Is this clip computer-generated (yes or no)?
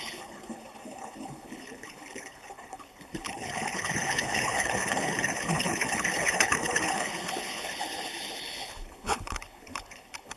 yes